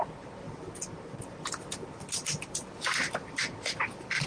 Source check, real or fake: real